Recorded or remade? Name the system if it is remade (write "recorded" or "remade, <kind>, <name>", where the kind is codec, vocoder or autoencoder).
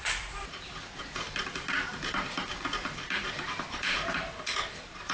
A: remade, vocoder, BigVGAN v2